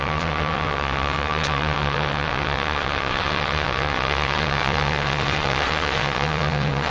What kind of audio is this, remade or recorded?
remade